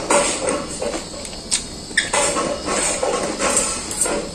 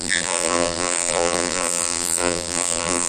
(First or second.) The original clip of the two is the first